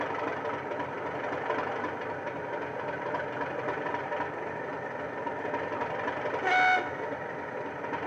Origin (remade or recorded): recorded